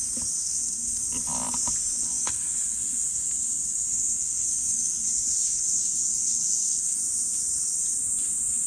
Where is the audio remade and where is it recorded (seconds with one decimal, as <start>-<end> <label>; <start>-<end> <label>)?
0.0-0.4 recorded; 0.4-1.0 remade; 1.0-2.0 recorded; 2.0-7.0 remade; 7.0-8.7 recorded